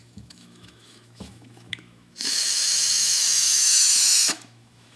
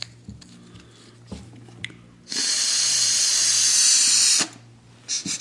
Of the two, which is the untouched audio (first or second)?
second